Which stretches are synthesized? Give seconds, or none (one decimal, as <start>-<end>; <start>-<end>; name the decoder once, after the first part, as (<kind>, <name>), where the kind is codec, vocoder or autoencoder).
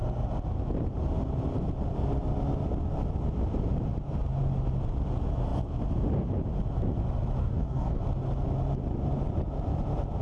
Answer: 7.4-8.0 (codec, DAC)